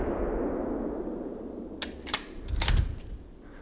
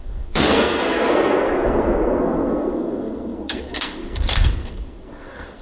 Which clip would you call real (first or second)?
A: first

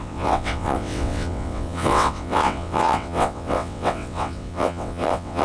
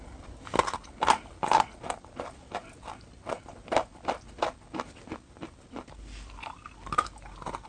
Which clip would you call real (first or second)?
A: second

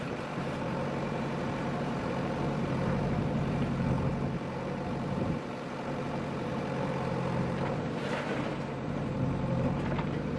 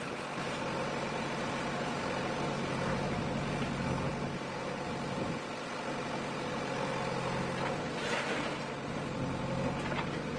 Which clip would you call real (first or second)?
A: second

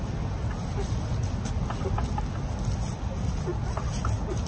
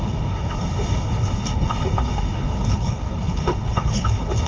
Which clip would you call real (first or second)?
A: first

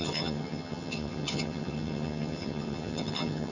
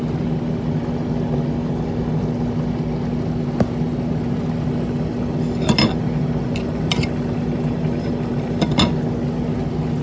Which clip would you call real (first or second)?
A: second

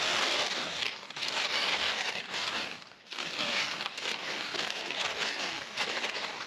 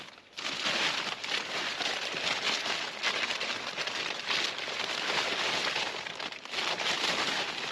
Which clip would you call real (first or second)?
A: second